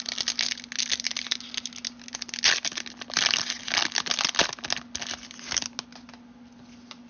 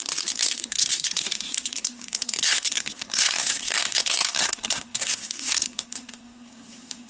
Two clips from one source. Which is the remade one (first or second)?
second